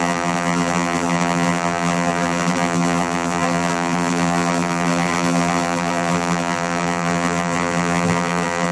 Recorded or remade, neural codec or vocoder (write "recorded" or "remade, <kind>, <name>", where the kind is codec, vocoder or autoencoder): remade, vocoder, BigVGAN v2